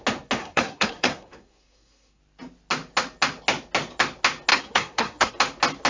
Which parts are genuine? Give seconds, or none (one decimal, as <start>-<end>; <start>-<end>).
0.0-0.4; 2.2-4.5; 5.3-5.9